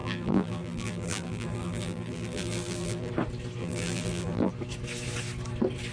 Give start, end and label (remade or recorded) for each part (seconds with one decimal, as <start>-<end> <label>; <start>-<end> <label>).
0.0-3.1 remade; 3.1-3.6 recorded; 3.6-4.5 remade; 4.5-5.9 recorded